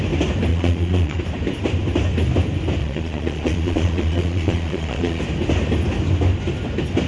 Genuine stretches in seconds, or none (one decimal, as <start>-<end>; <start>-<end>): 0.0-0.5; 1.2-2.8; 5.2-7.1